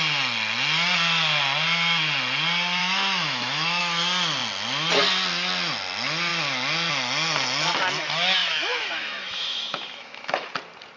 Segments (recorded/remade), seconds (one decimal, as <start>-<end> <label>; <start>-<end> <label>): 0.0-2.8 recorded; 2.8-3.8 remade; 3.8-8.4 recorded; 8.4-10.5 remade; 10.5-11.0 recorded